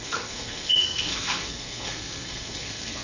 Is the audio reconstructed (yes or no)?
yes